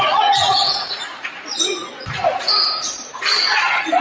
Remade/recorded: remade